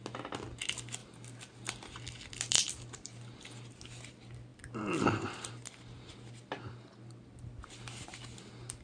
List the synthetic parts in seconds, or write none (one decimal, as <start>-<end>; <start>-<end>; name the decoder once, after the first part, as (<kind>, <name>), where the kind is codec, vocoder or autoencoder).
1.0-3.7 (vocoder, BigVGAN v2)